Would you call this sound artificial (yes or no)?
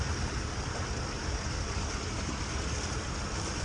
no